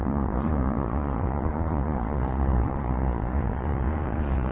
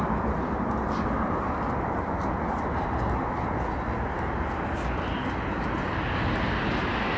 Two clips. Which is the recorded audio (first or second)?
second